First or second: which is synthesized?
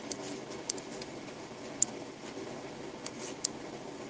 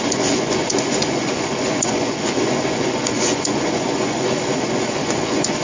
second